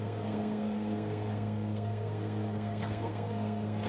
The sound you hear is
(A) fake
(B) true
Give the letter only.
A